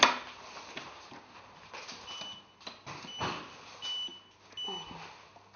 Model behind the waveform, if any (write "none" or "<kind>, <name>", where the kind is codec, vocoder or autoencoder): none